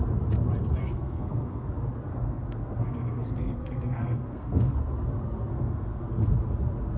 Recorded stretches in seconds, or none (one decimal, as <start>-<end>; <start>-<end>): 0.0-0.8; 1.7-2.1; 4.7-5.5; 6.1-7.0

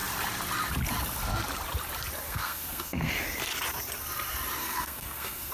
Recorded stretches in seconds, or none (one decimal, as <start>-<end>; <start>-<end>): 0.0-2.2; 3.1-4.6

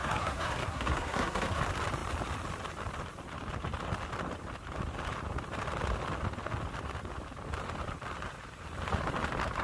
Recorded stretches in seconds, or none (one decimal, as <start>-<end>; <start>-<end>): 1.6-9.6

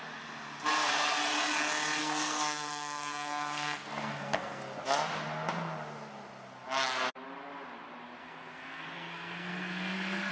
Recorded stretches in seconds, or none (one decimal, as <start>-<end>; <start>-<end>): 0.0-2.0; 4.6-8.2

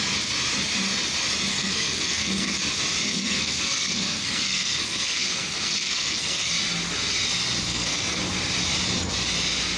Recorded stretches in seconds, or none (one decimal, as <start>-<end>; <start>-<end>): 0.0-1.5; 2.6-3.1; 6.5-7.7; 8.2-9.8

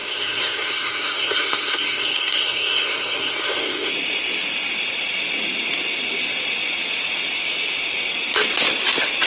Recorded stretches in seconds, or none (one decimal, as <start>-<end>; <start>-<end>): 3.9-9.3

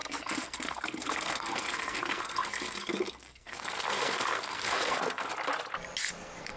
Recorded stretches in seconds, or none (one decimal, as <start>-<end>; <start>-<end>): 5.3-6.1